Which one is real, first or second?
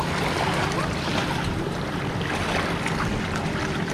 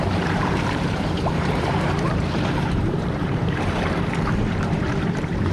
first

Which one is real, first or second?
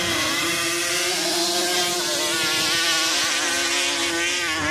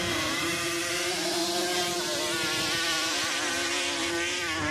first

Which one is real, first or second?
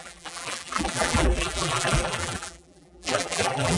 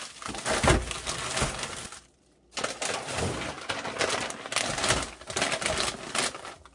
second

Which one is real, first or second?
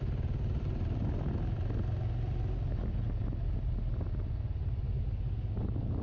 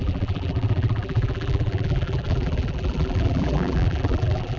first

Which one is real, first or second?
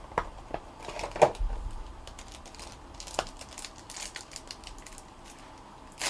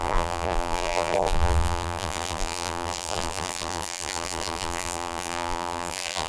first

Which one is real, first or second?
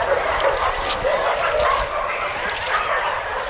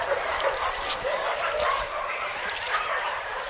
first